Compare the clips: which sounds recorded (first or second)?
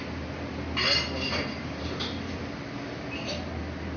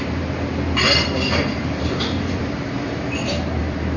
first